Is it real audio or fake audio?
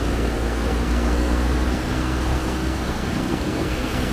fake